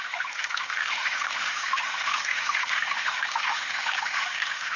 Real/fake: fake